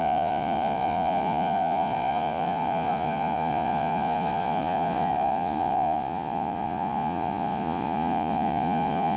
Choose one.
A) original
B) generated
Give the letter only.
B